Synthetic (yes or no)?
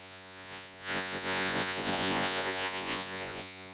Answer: yes